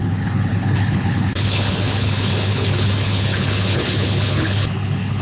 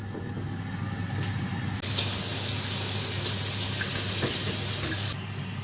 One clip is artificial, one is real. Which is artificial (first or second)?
first